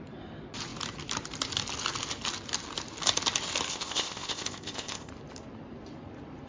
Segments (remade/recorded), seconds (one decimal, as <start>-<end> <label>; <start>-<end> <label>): 0.0-3.7 recorded; 3.7-5.1 remade; 5.1-6.5 recorded